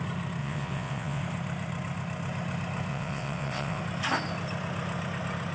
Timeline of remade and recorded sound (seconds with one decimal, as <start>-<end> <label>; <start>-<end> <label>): 0.0-0.4 recorded; 0.4-1.2 remade; 1.2-2.9 recorded; 2.9-3.8 remade; 3.8-5.5 recorded